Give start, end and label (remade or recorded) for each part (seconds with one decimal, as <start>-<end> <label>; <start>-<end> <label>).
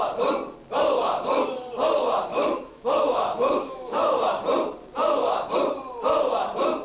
0.0-2.3 recorded; 2.3-4.2 remade; 4.2-6.8 recorded